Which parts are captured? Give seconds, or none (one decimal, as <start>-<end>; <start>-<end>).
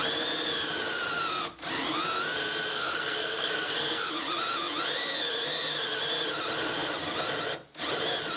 0.0-2.7; 4.1-8.4